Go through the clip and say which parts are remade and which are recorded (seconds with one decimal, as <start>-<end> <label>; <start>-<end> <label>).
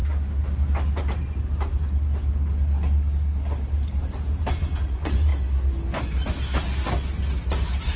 0.0-4.8 recorded; 4.8-5.3 remade; 5.3-8.0 recorded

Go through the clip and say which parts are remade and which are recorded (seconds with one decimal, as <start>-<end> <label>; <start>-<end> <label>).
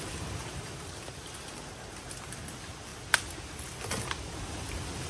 0.0-5.1 recorded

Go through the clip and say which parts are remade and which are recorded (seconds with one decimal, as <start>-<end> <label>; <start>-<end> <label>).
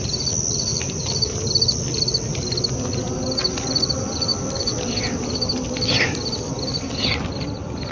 0.0-7.9 recorded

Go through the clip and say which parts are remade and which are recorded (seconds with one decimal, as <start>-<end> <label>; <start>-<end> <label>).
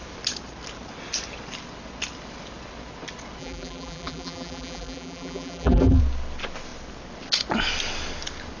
0.0-3.4 recorded; 3.4-6.0 remade; 6.0-8.6 recorded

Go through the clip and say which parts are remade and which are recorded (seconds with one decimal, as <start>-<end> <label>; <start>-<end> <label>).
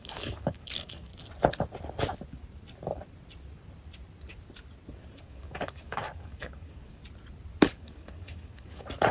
0.0-1.1 remade; 1.1-5.2 recorded; 5.2-7.0 remade; 7.0-7.6 recorded; 7.6-9.1 remade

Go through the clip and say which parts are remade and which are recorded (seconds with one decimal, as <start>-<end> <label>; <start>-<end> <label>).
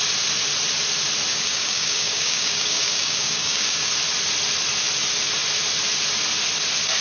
0.0-1.3 recorded; 1.3-3.9 remade; 3.9-7.0 recorded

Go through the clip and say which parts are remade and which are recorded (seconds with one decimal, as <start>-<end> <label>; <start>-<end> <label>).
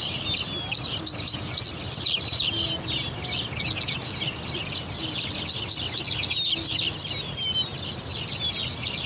0.0-9.1 recorded